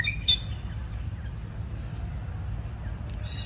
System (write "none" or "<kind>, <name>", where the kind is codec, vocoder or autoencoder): none